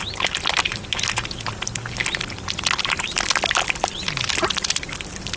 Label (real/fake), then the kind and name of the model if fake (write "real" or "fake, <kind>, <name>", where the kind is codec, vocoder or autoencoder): real